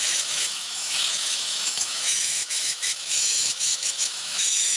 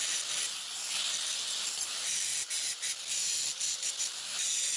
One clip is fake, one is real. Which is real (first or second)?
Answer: second